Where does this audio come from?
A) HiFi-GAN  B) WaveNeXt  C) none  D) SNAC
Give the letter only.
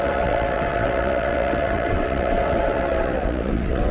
B